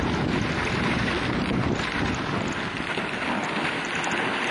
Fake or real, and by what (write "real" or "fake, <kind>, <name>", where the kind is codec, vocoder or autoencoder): real